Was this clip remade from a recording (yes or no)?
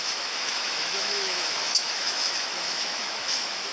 yes